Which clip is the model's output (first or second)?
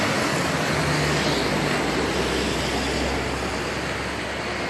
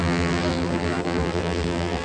second